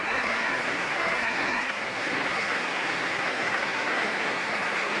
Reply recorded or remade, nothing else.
remade